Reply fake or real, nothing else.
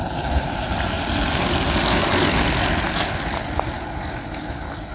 real